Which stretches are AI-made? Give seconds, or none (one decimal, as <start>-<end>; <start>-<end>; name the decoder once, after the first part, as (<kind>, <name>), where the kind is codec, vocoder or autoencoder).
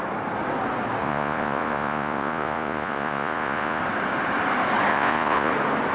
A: 1.0-3.8 (vocoder, Vocos); 4.9-5.5